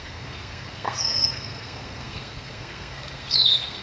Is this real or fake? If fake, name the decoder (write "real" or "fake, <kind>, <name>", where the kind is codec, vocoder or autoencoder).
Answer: fake, codec, SNAC